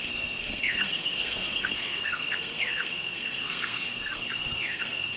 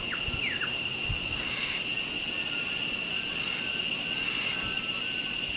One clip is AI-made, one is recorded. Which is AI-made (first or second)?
first